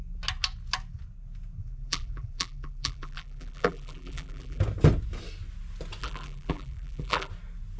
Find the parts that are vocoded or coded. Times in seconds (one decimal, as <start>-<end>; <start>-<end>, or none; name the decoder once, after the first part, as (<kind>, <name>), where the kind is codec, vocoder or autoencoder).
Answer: 1.6-4.6 (vocoder, BigVGAN v2); 6.0-7.3